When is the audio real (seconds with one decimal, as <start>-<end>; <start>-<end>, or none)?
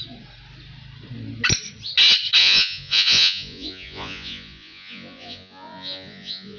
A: 0.0-2.4